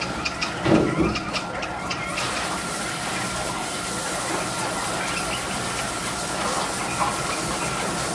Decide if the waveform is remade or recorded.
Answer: recorded